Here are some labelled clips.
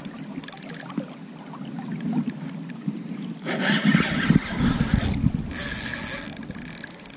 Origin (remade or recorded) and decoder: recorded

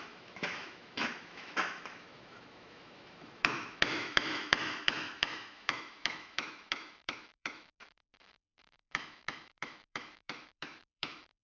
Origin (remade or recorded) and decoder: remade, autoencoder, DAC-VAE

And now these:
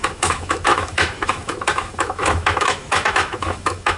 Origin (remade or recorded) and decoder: remade, autoencoder, DAC-VAE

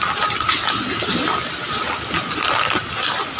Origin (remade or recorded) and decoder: recorded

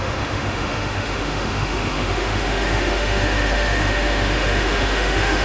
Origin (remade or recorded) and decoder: remade, autoencoder, DAC-VAE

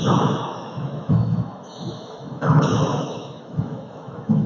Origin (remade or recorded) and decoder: remade, autoencoder, DAC-VAE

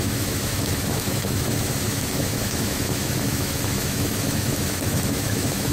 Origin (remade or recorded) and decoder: remade, autoencoder, DAC-VAE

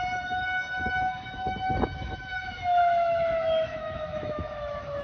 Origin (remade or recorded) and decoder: remade, autoencoder, DAC-VAE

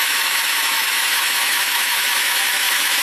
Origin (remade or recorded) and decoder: remade, autoencoder, DAC-VAE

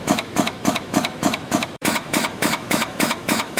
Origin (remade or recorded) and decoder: remade, autoencoder, DAC-VAE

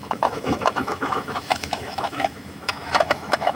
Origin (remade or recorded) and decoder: remade, autoencoder, DAC-VAE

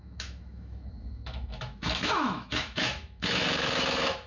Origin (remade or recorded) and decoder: remade, autoencoder, DAC-VAE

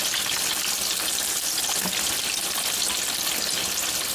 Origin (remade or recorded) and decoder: recorded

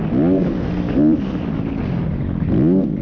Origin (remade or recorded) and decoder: recorded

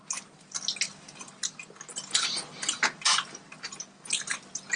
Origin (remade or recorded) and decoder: recorded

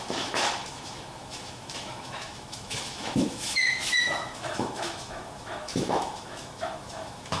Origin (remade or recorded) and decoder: remade, autoencoder, DAC-VAE